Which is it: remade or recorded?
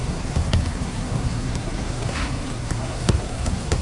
remade